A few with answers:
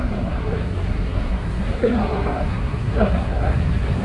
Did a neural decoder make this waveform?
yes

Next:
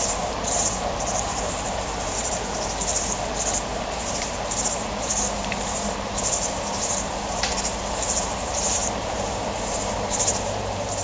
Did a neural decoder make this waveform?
yes